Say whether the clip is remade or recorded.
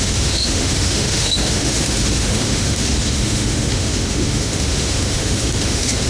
remade